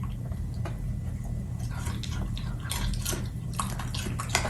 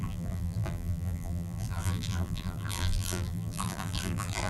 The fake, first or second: second